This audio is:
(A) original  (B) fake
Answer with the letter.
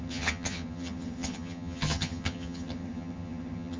B